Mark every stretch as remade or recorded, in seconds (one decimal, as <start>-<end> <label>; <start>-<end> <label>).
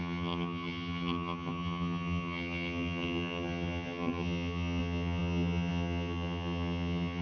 0.0-7.2 remade